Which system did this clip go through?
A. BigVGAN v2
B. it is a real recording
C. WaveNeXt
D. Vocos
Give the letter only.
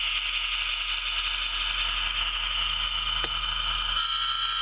B